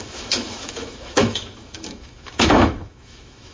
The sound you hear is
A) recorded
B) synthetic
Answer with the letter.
B